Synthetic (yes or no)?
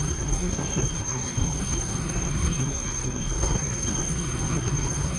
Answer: yes